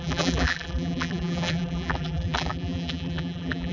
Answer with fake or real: fake